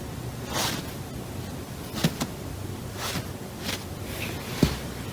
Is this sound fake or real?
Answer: real